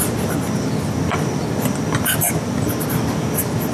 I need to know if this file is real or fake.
real